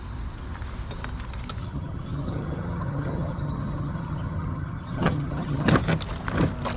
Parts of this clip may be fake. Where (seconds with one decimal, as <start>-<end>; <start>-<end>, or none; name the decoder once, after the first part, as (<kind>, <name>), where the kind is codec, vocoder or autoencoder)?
1.6-5.7 (vocoder, HiFi-GAN)